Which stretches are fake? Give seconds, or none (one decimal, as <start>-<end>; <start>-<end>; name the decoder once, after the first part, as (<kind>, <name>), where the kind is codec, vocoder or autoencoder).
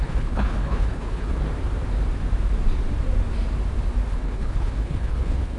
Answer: 0.0-1.4 (codec, HILCodec); 4.1-5.6